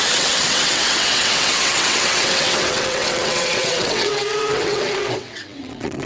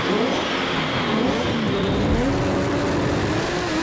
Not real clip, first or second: first